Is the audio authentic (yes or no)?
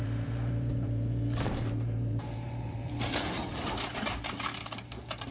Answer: no